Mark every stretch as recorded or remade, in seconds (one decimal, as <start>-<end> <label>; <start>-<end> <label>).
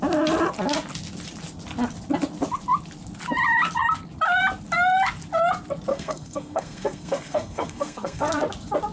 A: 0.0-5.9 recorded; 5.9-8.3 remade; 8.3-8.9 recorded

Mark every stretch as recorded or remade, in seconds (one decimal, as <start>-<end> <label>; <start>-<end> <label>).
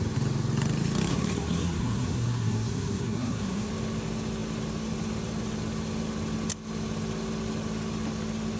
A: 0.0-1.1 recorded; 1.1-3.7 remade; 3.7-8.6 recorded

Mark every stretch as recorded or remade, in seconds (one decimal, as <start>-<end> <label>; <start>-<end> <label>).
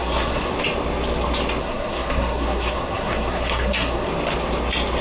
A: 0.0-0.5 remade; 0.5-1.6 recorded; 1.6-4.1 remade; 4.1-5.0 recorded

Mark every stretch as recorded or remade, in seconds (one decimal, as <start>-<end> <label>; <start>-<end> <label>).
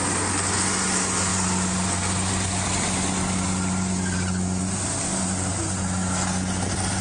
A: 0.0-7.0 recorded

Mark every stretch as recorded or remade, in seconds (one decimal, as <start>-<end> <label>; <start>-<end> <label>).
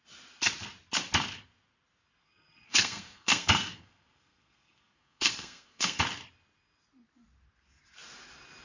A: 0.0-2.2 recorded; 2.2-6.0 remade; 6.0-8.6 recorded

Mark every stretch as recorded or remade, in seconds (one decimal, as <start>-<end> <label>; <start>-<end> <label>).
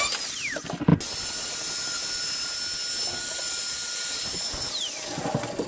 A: 0.0-5.7 recorded